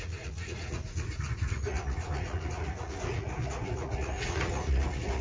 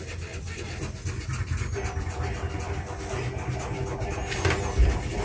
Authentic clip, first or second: second